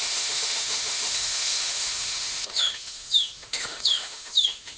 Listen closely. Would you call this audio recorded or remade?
remade